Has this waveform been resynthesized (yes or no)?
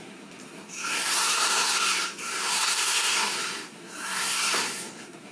yes